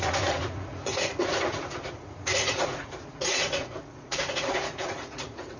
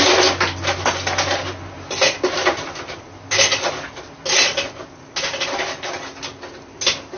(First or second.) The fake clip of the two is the first